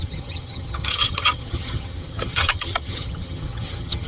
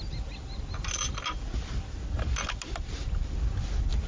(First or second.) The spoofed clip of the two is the first